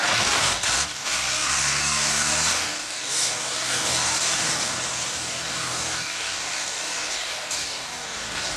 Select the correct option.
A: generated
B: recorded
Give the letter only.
A